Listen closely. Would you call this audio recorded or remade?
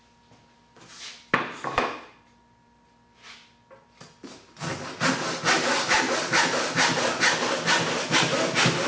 recorded